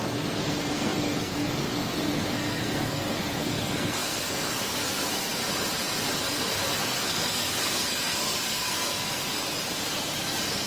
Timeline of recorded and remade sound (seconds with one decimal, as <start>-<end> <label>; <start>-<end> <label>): 0.0-5.4 remade; 5.4-6.1 recorded; 6.1-9.3 remade; 9.3-10.2 recorded; 10.2-10.7 remade